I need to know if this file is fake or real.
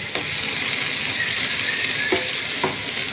real